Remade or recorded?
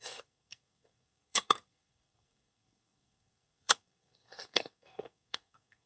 remade